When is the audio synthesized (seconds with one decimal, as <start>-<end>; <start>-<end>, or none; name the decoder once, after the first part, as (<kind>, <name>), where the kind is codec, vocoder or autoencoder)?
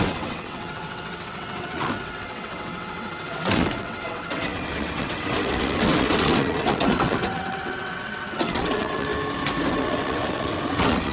0.0-9.1 (vocoder, WaveNeXt); 9.7-11.1